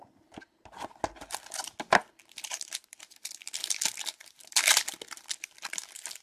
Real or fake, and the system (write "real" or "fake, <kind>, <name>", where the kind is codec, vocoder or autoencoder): real